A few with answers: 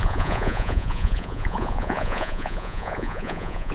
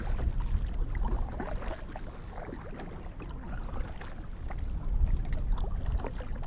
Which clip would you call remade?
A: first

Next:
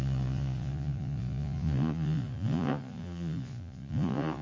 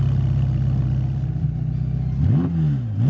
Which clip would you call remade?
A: first